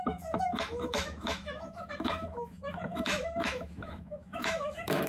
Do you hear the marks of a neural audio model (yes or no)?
yes